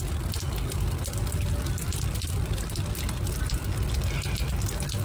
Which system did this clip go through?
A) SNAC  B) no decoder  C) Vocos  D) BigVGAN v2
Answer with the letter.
B